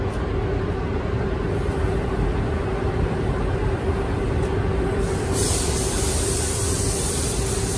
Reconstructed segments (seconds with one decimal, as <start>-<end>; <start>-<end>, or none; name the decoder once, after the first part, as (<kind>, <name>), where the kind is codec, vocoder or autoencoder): 1.7-6.1 (vocoder, BigVGAN v2)